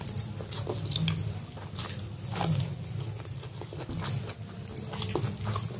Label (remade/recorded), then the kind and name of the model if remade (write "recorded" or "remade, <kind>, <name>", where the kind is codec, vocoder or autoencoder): recorded